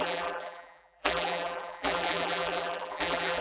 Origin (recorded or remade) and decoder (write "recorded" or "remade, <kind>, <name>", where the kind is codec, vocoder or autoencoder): remade, vocoder, BigVGAN v2